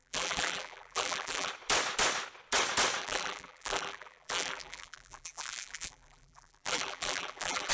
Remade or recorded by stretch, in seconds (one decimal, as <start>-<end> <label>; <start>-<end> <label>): 0.0-1.5 remade; 1.5-3.0 recorded; 3.0-7.7 remade